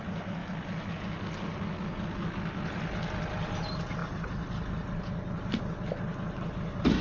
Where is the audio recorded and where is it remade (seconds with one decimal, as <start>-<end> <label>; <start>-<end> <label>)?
0.0-7.0 recorded